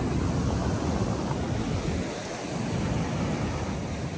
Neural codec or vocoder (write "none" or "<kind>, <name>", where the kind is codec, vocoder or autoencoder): none